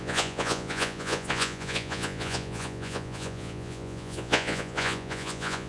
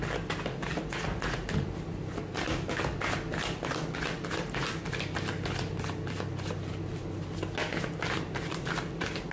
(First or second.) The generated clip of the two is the first